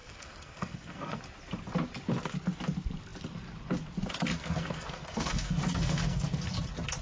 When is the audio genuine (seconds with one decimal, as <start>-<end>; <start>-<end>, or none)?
1.2-4.3; 6.5-7.0